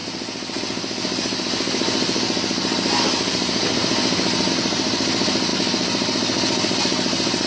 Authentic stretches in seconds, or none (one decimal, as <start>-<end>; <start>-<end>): 0.0-4.5